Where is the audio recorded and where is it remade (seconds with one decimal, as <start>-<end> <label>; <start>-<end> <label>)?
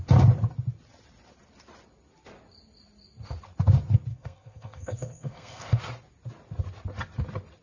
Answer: 0.0-4.1 recorded; 4.1-5.8 remade; 5.8-7.6 recorded